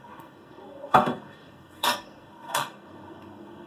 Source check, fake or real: fake